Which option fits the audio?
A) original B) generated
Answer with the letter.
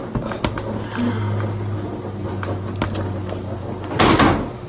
A